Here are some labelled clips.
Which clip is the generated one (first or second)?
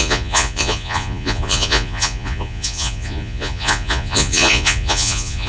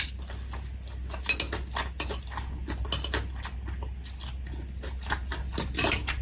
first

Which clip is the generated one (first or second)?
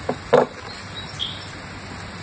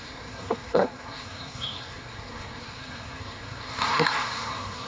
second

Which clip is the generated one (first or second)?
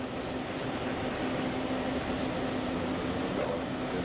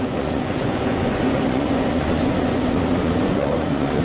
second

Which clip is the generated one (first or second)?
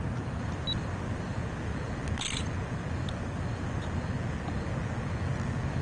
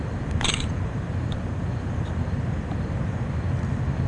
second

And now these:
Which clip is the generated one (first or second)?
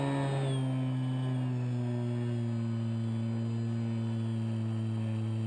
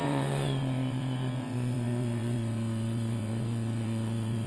second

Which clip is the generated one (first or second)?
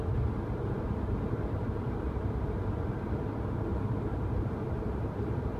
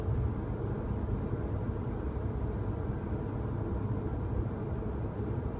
first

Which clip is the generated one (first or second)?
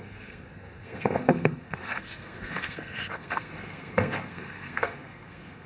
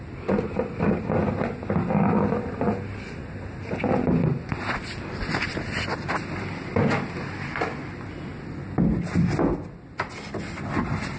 first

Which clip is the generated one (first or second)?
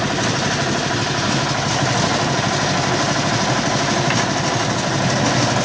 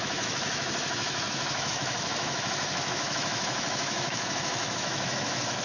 second